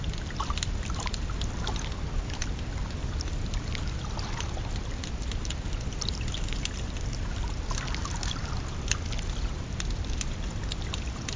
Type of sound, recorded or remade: recorded